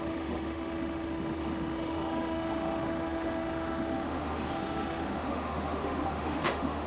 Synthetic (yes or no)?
yes